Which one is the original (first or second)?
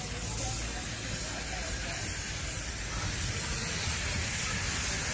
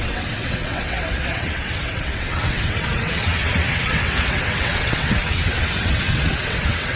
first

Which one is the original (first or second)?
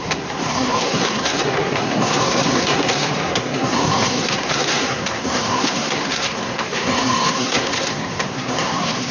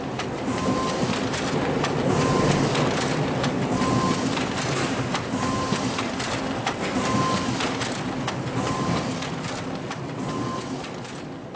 second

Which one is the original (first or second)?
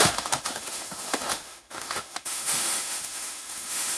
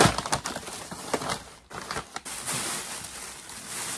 second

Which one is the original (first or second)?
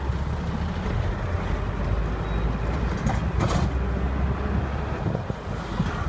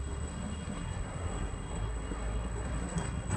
first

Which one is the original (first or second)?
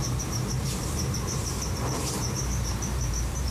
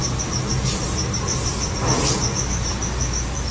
second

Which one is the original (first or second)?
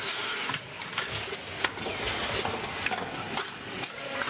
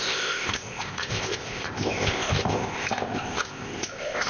first